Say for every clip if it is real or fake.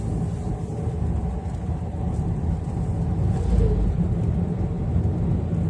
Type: real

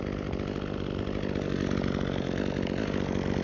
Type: fake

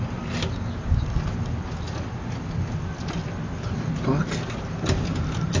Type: real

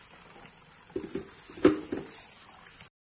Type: real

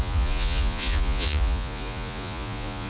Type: fake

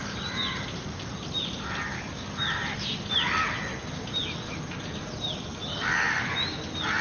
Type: real